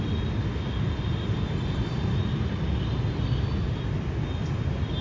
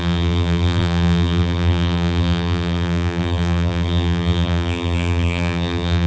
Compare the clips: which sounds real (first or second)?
first